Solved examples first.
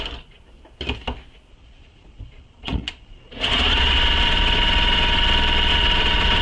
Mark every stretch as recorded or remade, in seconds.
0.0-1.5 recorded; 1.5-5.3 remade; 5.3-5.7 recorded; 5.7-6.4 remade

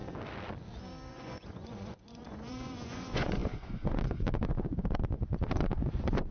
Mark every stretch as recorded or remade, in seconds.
0.0-1.1 recorded; 1.1-6.3 remade

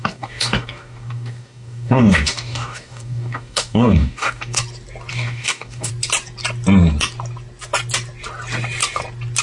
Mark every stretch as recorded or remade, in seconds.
0.0-4.6 remade; 4.6-5.1 recorded; 5.1-5.9 remade; 5.9-9.4 recorded

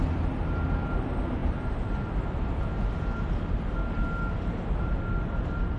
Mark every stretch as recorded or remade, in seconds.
0.0-5.8 recorded